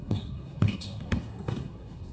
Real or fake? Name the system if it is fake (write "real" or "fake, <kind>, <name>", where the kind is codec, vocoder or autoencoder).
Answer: fake, codec, SNAC